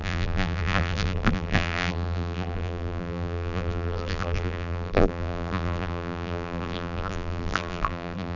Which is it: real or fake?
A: fake